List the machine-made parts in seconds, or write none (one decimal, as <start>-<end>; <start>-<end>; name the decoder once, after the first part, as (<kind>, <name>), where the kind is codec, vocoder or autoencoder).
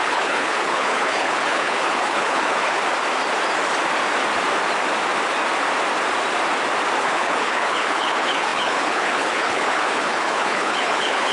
0.0-2.8 (codec, HILCodec); 7.0-11.3